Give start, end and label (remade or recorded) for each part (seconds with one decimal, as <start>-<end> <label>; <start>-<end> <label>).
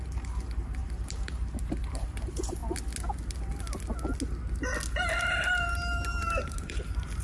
0.0-2.6 remade; 2.6-5.7 recorded; 5.7-7.2 remade